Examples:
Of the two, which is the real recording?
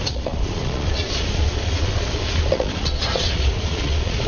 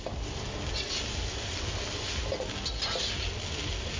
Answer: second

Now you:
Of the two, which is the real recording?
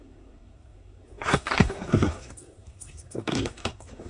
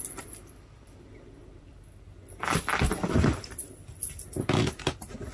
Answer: second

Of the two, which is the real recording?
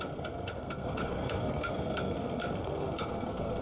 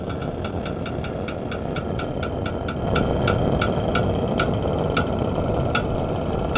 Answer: second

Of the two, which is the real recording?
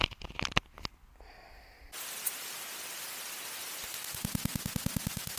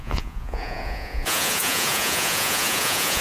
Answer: first